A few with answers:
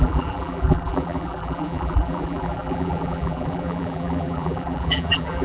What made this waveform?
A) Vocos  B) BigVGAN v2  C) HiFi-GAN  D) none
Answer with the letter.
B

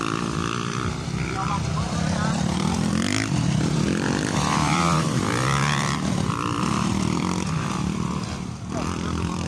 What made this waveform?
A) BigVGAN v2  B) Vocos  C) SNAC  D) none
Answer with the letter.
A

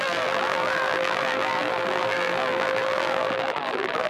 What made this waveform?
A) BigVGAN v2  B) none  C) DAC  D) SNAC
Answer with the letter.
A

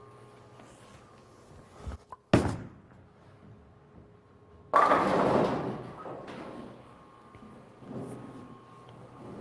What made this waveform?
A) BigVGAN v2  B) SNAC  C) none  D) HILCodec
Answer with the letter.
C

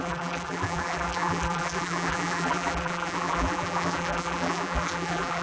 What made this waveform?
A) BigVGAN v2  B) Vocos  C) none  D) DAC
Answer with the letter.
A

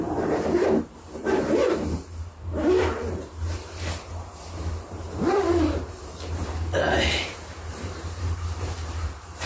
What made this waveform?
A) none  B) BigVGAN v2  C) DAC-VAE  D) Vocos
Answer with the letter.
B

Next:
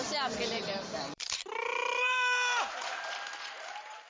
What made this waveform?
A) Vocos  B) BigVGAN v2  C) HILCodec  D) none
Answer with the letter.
B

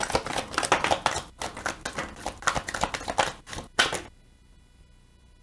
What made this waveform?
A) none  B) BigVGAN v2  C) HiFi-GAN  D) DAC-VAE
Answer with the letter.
A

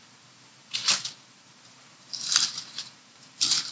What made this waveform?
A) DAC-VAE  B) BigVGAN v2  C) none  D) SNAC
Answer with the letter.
B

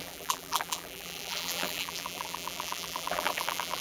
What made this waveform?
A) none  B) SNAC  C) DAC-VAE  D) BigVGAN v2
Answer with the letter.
D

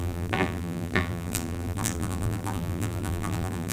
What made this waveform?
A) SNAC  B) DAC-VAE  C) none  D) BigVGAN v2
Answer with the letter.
D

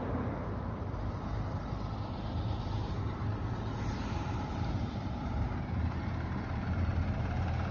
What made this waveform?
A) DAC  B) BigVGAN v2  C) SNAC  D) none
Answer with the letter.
B